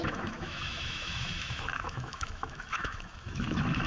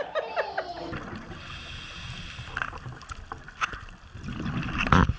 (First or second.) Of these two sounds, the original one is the second